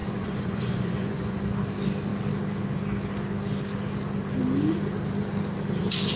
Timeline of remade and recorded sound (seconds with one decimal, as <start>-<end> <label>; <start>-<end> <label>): 0.0-1.4 remade; 1.4-6.2 recorded